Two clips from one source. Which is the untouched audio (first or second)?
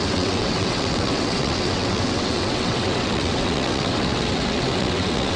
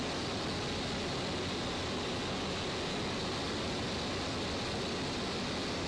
second